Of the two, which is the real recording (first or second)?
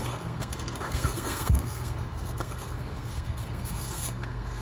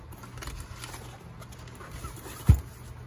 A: second